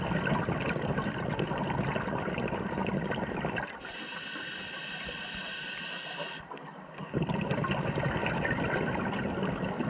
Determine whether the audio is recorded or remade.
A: recorded